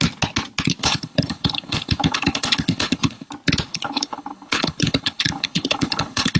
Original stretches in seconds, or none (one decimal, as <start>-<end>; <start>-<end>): 0.0-0.8; 3.3-3.7